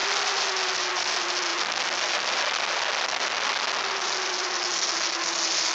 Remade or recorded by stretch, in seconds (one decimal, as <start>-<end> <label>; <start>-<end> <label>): 0.0-5.7 recorded